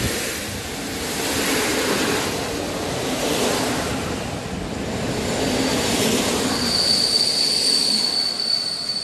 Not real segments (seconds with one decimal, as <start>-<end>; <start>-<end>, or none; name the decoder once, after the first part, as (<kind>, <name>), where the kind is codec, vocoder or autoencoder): none